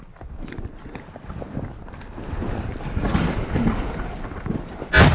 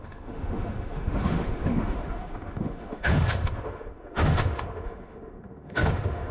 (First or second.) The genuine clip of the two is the first